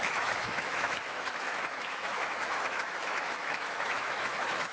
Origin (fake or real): fake